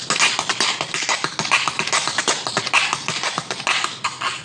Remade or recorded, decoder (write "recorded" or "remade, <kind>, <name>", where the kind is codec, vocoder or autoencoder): recorded